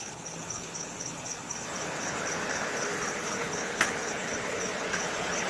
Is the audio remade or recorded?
remade